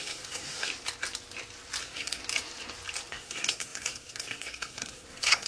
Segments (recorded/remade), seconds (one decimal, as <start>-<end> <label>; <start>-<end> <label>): 0.0-0.7 remade; 0.7-1.8 recorded; 1.8-2.2 remade; 2.2-3.1 recorded; 3.1-5.5 remade